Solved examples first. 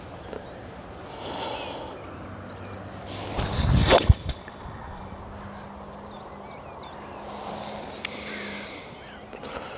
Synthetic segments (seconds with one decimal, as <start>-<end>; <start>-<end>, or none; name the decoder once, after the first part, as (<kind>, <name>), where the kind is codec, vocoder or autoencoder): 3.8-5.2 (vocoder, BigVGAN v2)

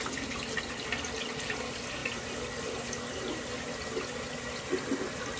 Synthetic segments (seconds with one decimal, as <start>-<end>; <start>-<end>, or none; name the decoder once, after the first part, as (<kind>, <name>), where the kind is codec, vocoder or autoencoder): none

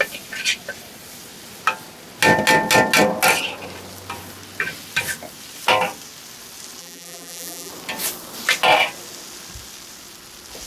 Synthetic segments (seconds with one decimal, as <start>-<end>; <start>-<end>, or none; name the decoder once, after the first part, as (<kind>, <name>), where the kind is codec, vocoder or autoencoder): 6.8-7.7 (vocoder, BigVGAN v2)

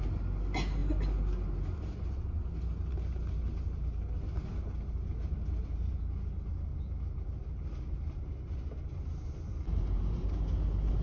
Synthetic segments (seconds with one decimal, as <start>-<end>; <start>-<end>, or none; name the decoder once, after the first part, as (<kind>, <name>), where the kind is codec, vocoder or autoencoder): 6.7-10.4 (vocoder, BigVGAN v2)

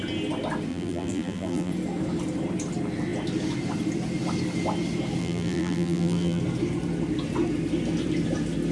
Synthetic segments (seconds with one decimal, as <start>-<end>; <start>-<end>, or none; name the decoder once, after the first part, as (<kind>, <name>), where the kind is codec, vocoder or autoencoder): 0.7-1.7 (vocoder, BigVGAN v2); 5.2-6.4

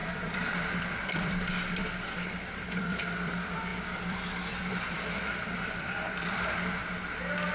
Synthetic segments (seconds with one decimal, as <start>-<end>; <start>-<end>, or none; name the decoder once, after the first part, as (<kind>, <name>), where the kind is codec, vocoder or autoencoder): 0.0-6.8 (vocoder, BigVGAN v2)

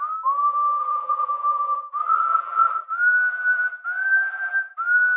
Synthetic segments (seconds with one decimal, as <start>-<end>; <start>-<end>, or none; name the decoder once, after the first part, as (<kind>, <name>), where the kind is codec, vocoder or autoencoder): 0.8-1.3 (vocoder, BigVGAN v2); 2.0-2.9

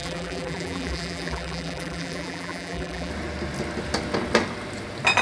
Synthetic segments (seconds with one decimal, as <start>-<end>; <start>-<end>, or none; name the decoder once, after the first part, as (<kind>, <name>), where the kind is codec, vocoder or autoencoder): 0.0-3.1 (vocoder, BigVGAN v2)